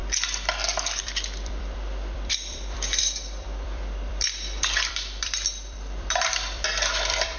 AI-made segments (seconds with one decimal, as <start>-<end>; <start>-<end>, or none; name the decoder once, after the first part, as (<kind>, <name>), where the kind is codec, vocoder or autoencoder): 1.0-7.4 (vocoder, BigVGAN v2)

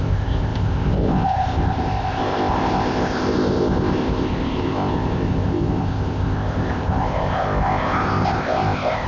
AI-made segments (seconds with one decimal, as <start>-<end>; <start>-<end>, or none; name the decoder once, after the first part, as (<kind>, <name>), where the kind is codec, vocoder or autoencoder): 0.0-9.1 (codec, ZipCodec)

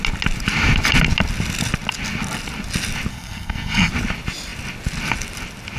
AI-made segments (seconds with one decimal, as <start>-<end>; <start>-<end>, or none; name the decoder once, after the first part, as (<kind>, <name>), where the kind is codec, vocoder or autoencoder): 3.1-3.9 (codec, SNAC)

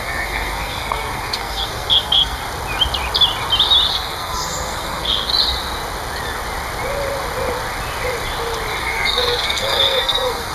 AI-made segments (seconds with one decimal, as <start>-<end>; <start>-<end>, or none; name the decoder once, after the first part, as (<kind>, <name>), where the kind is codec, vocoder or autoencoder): 0.0-2.4 (codec, SNAC); 3.9-5.3; 8.8-10.5

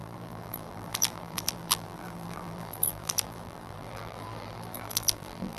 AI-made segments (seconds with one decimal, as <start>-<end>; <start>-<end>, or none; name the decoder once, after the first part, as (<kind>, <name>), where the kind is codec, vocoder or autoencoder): 0.0-5.6 (vocoder, BigVGAN v2)

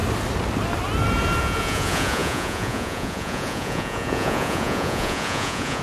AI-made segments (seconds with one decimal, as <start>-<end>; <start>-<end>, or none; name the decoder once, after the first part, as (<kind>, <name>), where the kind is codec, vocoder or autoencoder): 1.4-5.8 (vocoder, Vocos)

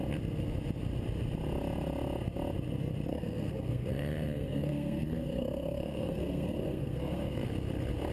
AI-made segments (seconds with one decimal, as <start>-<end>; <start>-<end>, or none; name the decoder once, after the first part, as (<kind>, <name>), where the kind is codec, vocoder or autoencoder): 3.1-7.5 (codec, SNAC)